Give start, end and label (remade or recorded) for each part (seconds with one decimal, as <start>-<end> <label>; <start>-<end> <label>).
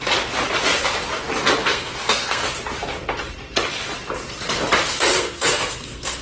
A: 0.0-1.6 recorded; 1.6-2.5 remade; 2.5-4.9 recorded; 4.9-6.2 remade